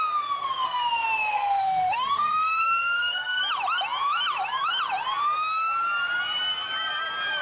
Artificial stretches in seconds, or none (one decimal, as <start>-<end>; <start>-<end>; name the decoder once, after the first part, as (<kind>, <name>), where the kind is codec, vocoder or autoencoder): 0.4-3.4 (codec, SNAC)